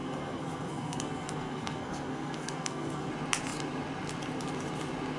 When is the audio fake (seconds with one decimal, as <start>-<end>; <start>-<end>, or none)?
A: 0.0-3.1